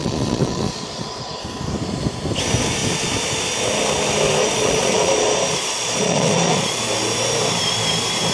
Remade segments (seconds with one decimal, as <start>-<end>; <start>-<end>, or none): 0.0-1.4; 4.4-6.8